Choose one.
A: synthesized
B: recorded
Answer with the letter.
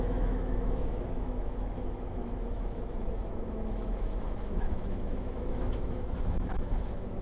A